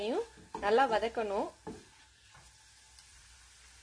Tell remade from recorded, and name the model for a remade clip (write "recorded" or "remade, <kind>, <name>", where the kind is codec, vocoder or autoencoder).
recorded